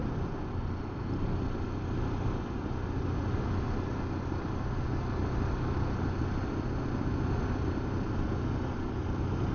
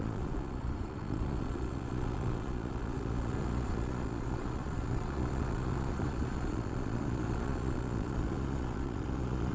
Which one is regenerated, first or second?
second